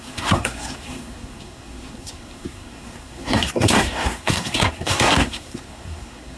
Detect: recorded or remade remade